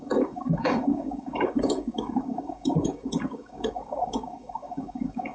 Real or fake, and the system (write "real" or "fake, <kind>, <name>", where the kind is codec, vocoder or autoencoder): fake, codec, DAC